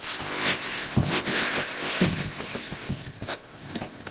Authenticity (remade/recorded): remade